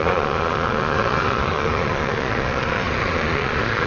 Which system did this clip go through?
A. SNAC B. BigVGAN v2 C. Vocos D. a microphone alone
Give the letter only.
C